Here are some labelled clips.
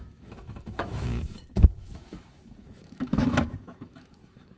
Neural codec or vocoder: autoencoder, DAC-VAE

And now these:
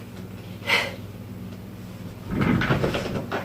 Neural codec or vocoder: none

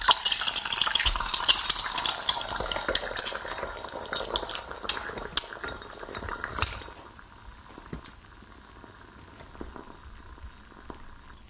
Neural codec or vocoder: none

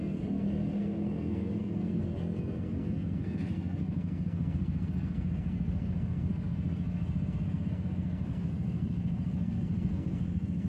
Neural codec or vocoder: codec, SNAC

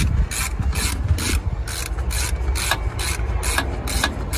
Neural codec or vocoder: none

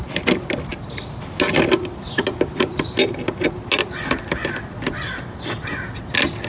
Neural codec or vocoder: none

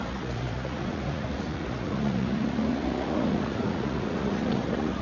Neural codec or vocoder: vocoder, Vocos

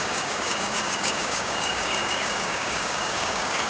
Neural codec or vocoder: codec, DAC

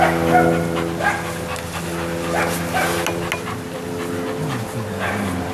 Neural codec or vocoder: none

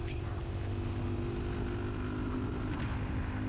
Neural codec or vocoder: none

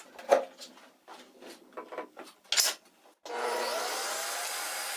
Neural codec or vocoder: none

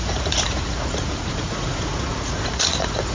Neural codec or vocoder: vocoder, Vocos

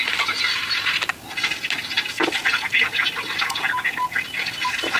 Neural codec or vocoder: none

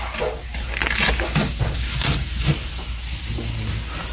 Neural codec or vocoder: none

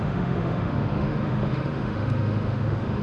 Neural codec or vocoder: autoencoder, DAC-VAE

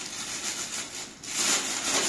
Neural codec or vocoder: none